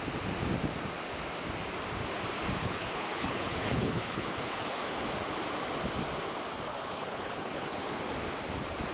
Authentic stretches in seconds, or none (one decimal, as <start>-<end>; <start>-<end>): 0.0-2.6; 4.8-6.7; 7.9-8.9